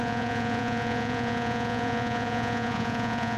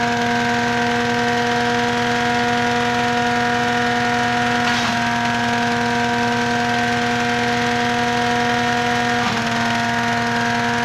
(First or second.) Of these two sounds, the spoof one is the first